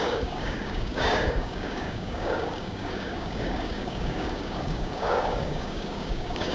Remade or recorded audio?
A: remade